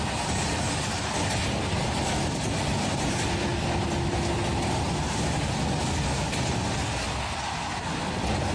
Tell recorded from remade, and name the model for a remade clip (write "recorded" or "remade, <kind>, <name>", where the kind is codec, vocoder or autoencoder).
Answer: recorded